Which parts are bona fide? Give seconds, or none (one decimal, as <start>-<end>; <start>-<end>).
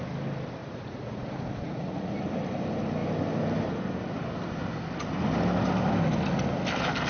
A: 0.0-0.6; 2.1-7.1